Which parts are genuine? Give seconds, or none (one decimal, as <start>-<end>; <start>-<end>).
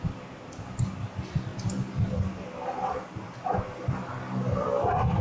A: 0.0-1.5; 2.1-5.2